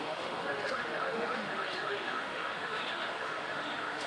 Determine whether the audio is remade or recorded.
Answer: remade